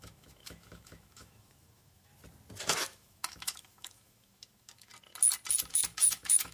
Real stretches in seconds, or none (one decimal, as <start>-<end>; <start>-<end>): 2.1-2.6; 4.9-5.7